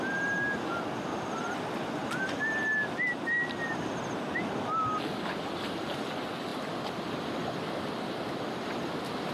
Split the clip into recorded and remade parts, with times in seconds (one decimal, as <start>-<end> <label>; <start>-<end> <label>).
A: 0.0-9.3 recorded